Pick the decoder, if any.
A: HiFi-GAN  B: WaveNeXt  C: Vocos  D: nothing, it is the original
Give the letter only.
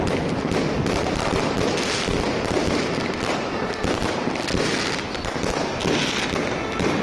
D